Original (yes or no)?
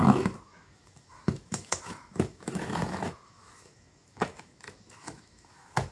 no